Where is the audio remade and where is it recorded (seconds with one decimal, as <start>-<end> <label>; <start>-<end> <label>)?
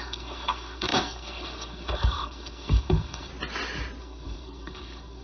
0.0-3.3 remade; 3.3-4.0 recorded; 4.0-5.2 remade